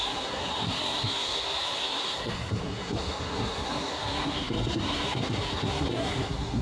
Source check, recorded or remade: remade